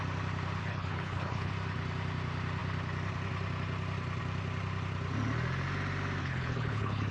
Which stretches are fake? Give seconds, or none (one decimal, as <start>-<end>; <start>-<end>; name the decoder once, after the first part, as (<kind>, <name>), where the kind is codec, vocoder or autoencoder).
0.6-1.5 (codec, HILCodec); 6.2-7.1